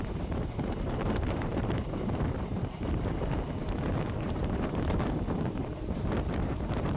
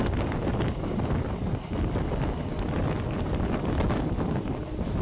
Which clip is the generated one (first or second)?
first